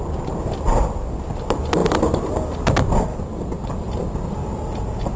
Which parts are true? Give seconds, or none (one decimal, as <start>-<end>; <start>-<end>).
0.0-5.2